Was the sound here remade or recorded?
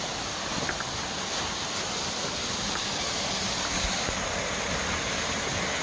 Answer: recorded